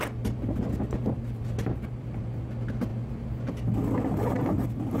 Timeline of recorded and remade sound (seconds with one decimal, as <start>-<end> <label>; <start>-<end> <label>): 0.0-5.0 recorded